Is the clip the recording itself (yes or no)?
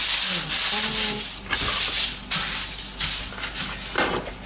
yes